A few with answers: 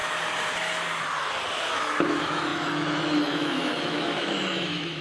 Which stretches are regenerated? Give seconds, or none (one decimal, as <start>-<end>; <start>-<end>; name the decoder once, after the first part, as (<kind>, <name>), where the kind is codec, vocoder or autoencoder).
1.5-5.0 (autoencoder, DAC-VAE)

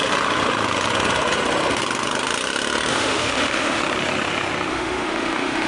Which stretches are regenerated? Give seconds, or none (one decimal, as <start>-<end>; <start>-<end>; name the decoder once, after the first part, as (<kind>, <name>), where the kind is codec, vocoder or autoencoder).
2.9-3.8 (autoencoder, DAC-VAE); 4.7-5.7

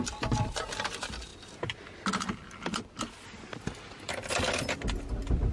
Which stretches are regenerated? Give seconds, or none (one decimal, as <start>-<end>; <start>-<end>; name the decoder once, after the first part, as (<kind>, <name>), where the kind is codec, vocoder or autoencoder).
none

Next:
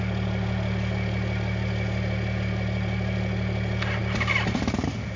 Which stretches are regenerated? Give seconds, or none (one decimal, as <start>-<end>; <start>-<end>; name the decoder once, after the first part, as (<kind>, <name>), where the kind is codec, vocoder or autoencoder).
none

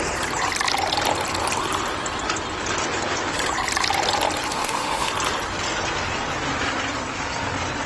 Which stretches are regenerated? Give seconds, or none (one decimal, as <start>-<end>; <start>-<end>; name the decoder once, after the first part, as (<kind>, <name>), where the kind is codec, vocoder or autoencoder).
4.5-5.1 (autoencoder, DAC-VAE)